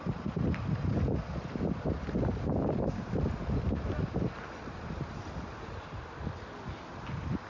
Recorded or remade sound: recorded